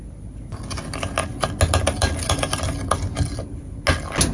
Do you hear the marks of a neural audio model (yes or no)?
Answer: no